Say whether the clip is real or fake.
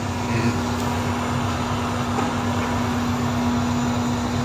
real